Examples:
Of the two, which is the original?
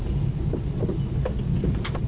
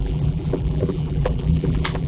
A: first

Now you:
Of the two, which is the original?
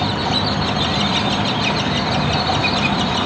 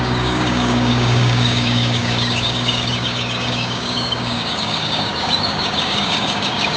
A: first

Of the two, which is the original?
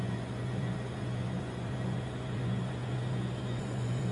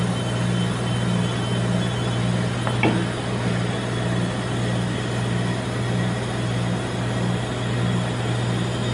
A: second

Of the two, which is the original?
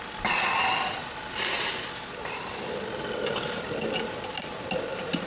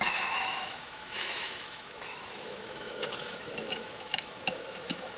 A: first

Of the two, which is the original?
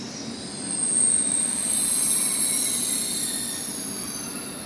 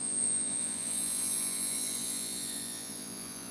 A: first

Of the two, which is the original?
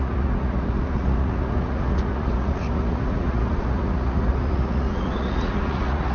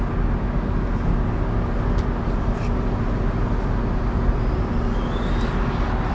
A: second